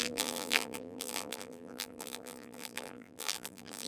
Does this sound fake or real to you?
fake